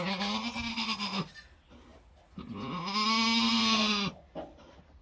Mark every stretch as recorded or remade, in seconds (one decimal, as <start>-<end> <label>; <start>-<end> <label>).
0.0-0.7 recorded; 0.7-1.3 remade; 1.3-5.0 recorded